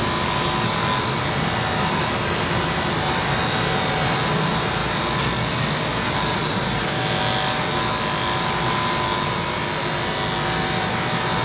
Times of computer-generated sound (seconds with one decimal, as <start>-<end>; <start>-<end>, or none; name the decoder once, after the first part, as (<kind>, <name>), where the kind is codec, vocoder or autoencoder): 6.3-6.9 (vocoder, Vocos)